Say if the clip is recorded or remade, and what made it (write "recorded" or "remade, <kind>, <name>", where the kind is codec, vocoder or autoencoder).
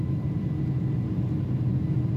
recorded